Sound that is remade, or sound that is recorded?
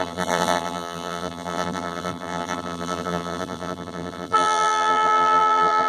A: remade